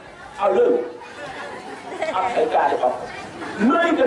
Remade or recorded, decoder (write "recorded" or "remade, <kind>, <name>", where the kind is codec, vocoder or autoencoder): recorded